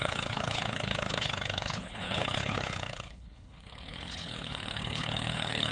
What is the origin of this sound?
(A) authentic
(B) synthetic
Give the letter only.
B